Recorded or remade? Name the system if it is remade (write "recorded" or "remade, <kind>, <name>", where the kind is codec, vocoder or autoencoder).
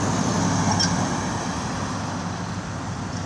recorded